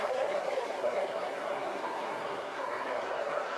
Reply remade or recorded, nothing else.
remade